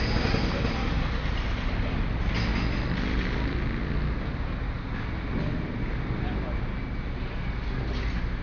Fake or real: real